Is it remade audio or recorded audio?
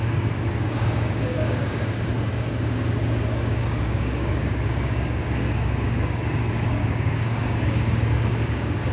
remade